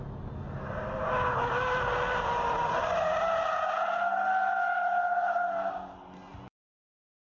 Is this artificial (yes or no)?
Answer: no